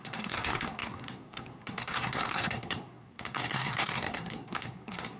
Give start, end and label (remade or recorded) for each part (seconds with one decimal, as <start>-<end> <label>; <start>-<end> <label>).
0.0-5.2 remade